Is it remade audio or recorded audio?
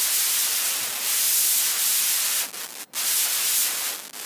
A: recorded